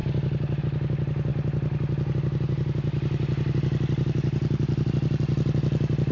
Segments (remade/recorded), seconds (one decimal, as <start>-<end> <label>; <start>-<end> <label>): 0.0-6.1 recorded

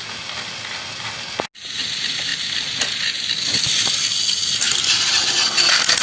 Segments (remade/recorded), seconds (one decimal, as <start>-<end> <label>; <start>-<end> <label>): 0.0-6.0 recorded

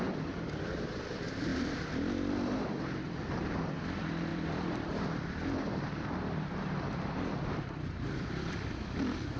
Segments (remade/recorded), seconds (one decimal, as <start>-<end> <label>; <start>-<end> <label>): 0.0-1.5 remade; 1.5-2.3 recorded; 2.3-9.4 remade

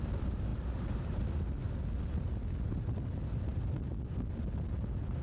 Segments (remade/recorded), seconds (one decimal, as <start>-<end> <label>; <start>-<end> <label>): 0.0-0.5 recorded; 0.5-1.3 remade; 1.3-3.5 recorded; 3.5-4.4 remade; 4.4-5.2 recorded